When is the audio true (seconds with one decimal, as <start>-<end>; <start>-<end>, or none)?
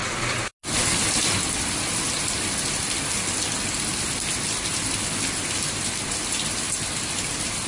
0.0-7.7